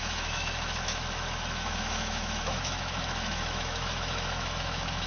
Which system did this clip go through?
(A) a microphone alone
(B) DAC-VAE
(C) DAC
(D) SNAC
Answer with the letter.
B